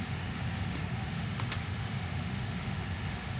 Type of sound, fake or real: fake